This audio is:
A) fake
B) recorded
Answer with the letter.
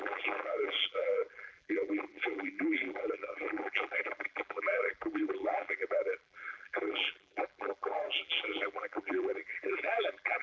A